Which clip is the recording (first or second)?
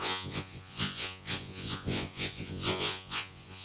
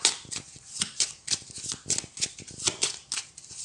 second